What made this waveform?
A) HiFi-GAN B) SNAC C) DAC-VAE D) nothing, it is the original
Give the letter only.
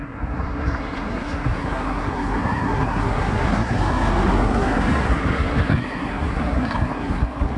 B